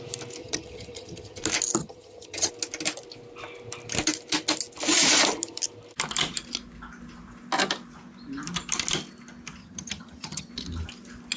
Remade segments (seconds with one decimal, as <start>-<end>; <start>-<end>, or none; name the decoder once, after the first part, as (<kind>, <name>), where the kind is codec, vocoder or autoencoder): 0.4-1.4 (vocoder, HiFi-GAN); 1.8-2.5; 9.6-10.5